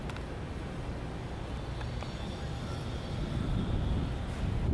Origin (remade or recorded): recorded